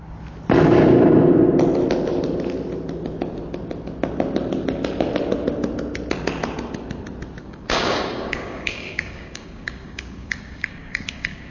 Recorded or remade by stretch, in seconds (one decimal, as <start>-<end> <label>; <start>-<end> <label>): 0.0-7.4 recorded; 7.4-11.5 remade